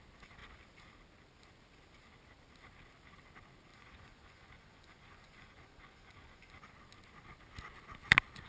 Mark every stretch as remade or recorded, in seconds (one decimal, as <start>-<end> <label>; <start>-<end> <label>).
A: 0.0-3.7 recorded; 3.7-6.7 remade; 6.7-8.5 recorded